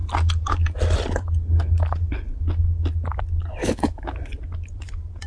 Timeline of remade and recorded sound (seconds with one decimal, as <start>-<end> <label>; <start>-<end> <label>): 0.0-3.6 recorded; 3.6-4.3 remade; 4.3-5.3 recorded